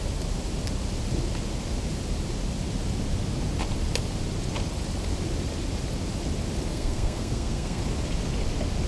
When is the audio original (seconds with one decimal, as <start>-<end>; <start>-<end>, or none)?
0.0-6.7; 7.8-8.9